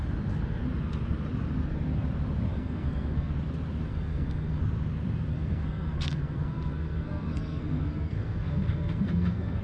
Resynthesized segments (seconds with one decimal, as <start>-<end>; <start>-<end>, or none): 2.5-3.3; 3.9-4.6; 5.3-9.6